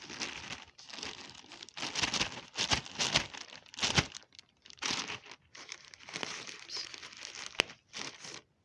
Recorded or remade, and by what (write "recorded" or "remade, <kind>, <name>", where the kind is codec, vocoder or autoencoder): recorded